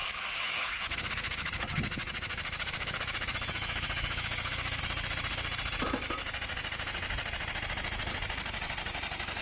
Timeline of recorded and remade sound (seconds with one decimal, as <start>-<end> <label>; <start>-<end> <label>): 0.0-4.8 remade; 4.8-9.4 recorded